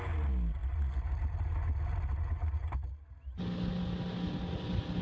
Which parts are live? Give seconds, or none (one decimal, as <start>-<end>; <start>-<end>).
0.0-5.0